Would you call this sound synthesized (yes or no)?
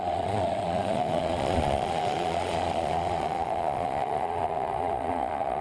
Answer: yes